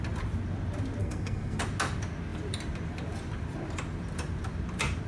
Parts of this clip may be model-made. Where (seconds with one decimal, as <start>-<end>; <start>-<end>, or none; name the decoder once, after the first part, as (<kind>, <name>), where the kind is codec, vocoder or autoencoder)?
1.0-1.6 (codec, SNAC)